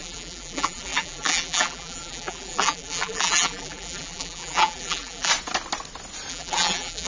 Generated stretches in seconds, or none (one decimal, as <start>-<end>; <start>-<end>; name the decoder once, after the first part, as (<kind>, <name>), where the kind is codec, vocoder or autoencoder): 0.0-5.3 (vocoder, BigVGAN v2); 6.3-7.1